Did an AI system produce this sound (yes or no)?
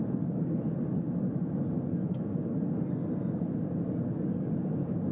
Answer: no